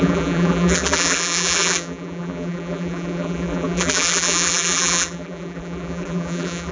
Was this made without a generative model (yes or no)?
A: no